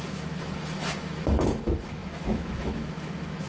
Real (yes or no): no